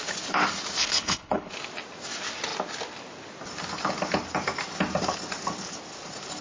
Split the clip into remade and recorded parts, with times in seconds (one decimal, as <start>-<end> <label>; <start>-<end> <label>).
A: 0.0-0.8 recorded; 0.8-1.5 remade; 1.5-6.4 recorded